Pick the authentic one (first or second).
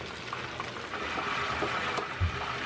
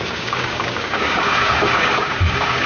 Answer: first